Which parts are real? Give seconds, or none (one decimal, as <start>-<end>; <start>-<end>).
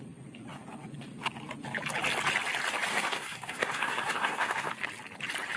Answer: 0.0-2.9; 4.7-5.6